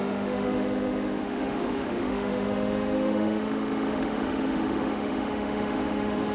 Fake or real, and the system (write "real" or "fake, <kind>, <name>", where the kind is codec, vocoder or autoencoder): fake, autoencoder, DAC-VAE